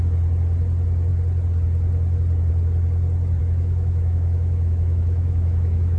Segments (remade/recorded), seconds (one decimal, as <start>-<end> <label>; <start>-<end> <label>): 0.0-3.4 recorded; 3.4-6.0 remade